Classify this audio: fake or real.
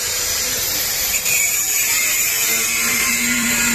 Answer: fake